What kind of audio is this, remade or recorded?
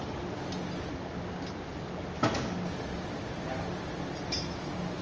recorded